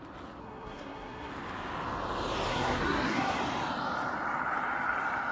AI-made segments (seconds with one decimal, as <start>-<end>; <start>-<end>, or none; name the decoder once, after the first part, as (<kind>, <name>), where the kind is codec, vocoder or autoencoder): 0.4-1.3 (codec, SNAC); 2.5-3.4